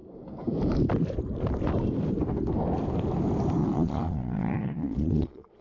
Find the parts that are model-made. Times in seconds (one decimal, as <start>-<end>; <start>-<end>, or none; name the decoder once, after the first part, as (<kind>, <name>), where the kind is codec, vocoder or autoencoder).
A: 3.6-5.6 (vocoder, Vocos)